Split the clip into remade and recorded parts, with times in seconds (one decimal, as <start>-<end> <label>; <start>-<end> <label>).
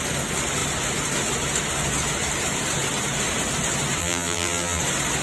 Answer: 0.0-4.0 recorded; 4.0-4.8 remade; 4.8-5.2 recorded